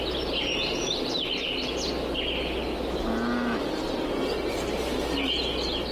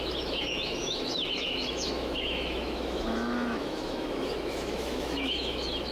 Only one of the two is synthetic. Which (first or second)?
second